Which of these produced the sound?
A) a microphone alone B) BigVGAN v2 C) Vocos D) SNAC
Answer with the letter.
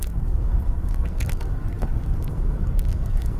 D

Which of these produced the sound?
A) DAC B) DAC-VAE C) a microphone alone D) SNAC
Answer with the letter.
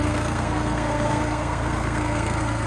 D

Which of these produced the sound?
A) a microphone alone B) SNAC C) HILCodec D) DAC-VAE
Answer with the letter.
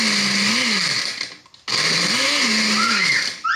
A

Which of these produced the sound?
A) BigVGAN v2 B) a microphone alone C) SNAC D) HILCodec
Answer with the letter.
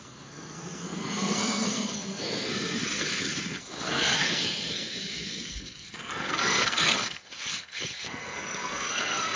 C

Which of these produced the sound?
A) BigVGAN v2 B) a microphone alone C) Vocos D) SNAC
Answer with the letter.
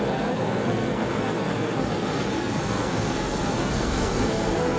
D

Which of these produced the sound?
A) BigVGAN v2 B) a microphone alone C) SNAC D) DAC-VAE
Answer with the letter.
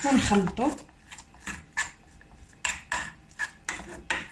B